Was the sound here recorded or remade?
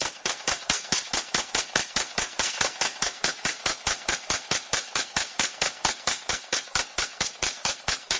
remade